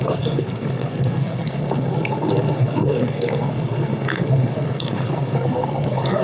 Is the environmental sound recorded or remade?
remade